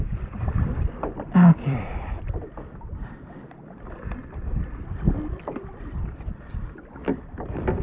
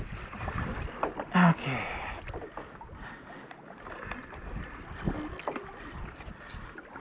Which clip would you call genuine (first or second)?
second